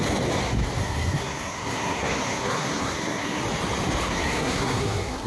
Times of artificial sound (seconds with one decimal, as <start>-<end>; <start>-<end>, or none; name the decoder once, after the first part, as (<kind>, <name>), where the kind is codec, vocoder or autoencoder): 0.8-3.4 (codec, SNAC); 4.0-5.3